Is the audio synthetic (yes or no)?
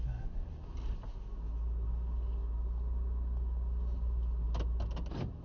no